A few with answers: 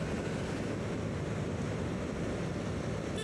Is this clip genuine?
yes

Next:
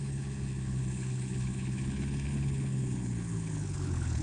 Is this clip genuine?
no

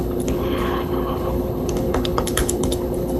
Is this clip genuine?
no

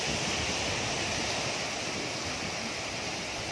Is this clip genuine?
yes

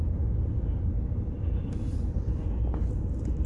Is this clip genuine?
yes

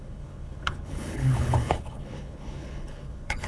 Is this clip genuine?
no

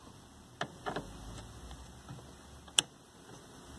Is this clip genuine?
yes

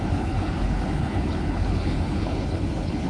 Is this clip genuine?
no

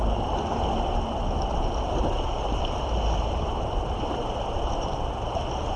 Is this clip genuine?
yes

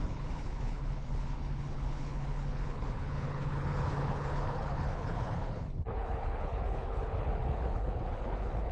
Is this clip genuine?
no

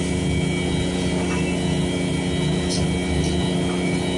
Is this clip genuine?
yes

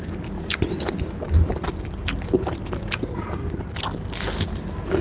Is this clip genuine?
yes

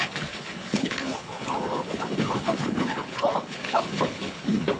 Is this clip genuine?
no